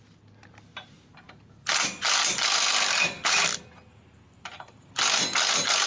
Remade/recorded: remade